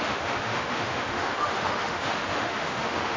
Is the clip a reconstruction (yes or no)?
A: yes